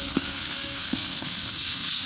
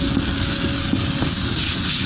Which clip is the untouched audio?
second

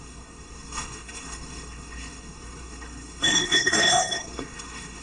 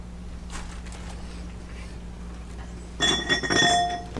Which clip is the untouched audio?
second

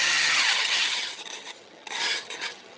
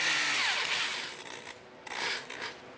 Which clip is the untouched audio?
second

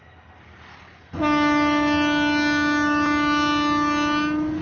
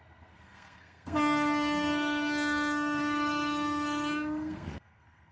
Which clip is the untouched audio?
first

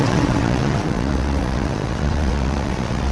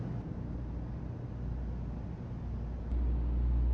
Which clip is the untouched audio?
second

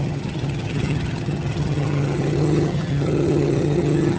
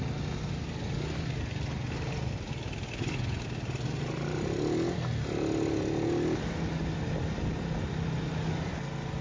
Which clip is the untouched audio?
second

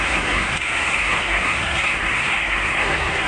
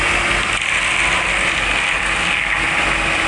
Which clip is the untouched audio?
second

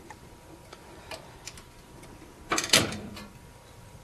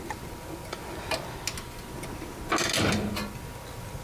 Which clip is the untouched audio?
second